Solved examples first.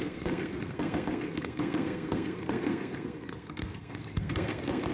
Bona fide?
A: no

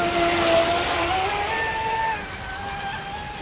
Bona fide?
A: yes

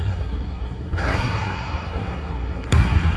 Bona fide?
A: no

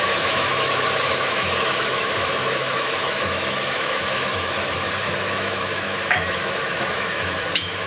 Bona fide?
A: no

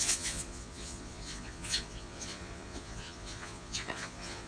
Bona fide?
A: no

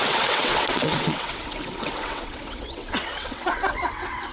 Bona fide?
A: no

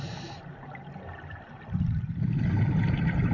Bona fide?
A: yes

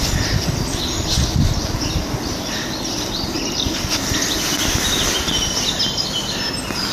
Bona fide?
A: no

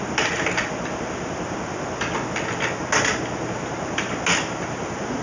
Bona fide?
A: yes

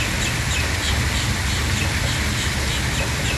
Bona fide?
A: yes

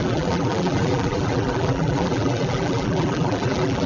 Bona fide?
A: no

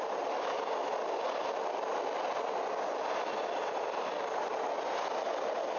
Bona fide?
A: yes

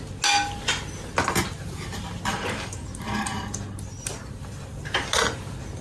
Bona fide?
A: yes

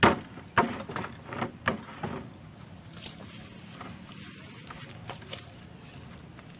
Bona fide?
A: yes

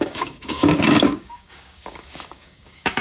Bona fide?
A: no